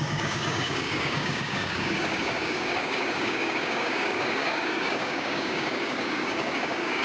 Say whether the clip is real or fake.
fake